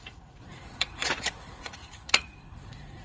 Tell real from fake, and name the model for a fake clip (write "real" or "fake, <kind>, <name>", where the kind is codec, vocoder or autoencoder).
fake, vocoder, Vocos